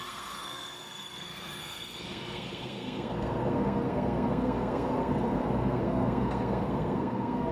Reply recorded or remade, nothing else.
remade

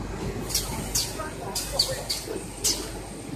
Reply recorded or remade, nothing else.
recorded